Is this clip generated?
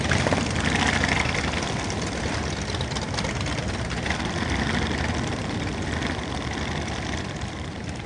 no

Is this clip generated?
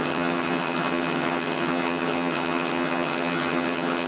yes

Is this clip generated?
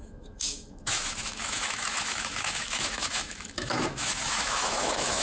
yes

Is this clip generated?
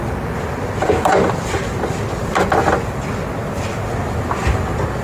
no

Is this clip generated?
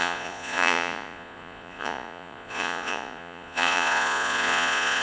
yes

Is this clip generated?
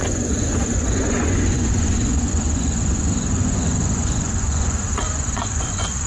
yes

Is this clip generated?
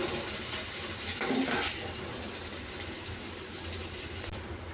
no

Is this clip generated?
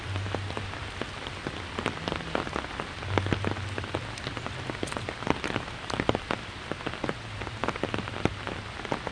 yes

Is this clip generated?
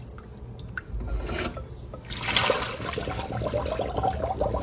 no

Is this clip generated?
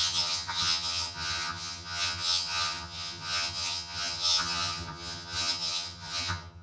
yes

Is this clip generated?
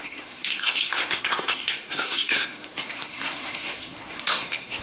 yes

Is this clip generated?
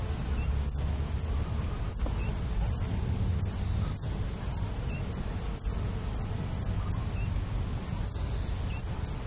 no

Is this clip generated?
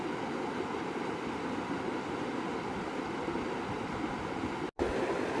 no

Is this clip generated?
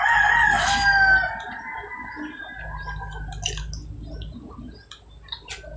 no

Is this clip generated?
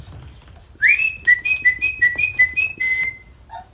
no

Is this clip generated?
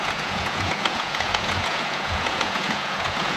yes